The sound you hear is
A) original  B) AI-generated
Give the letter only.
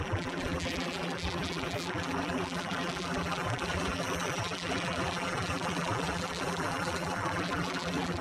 B